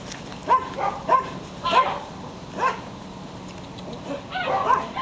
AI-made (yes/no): no